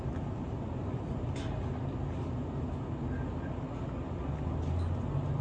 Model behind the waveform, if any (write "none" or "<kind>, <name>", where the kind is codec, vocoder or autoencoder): none